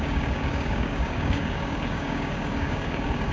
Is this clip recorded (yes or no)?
no